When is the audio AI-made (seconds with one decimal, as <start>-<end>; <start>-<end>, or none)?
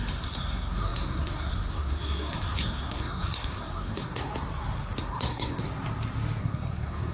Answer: 0.0-4.3; 5.0-5.6; 6.4-7.1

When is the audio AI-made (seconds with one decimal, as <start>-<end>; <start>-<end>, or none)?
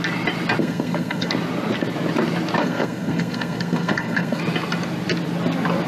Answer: 0.6-1.3; 2.6-4.4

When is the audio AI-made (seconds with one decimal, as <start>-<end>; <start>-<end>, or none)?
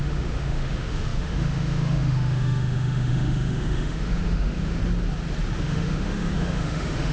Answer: 0.0-4.8; 5.6-7.1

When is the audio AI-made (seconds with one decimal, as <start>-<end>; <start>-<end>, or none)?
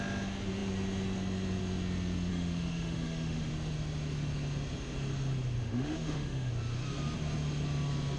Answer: 2.3-3.5; 5.6-6.5